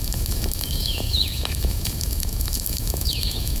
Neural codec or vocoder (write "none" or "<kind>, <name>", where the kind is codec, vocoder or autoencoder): autoencoder, DAC-VAE